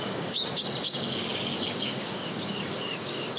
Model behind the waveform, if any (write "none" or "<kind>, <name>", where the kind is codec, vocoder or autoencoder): codec, DAC